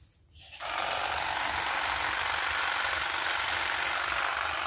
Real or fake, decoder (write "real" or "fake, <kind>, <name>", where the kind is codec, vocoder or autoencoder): real